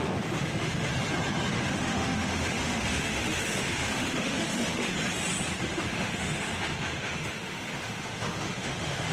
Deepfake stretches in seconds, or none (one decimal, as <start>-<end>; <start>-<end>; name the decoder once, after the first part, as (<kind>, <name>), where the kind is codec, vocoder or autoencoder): 0.0-0.9 (autoencoder, DAC-VAE); 1.5-4.9; 5.7-9.1